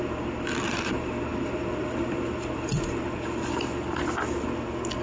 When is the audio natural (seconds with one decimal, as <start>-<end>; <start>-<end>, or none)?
0.0-5.0